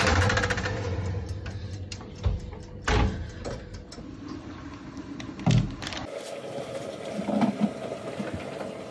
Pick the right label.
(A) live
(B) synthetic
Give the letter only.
A